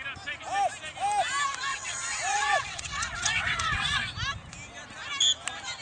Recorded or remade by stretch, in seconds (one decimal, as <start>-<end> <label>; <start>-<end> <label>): 0.0-1.7 recorded; 1.7-4.1 remade; 4.1-5.8 recorded